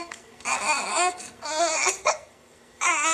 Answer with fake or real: fake